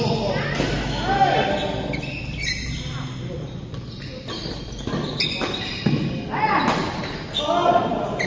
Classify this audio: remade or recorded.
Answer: recorded